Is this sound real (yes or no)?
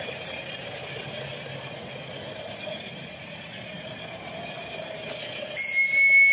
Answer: yes